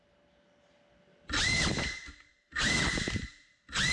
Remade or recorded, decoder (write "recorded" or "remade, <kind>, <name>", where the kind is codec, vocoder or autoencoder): recorded